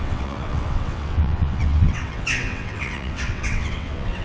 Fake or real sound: fake